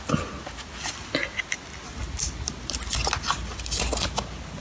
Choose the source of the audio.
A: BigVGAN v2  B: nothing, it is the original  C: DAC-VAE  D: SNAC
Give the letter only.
B